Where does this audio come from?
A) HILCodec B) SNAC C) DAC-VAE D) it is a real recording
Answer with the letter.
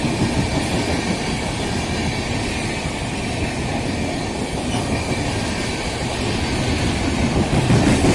D